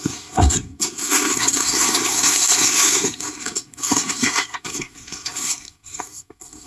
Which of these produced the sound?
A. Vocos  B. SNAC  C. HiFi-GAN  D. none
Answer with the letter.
B